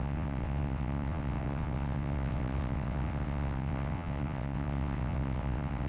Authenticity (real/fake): fake